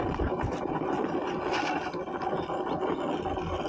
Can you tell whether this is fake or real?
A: real